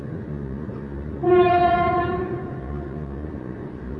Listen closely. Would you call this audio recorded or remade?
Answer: remade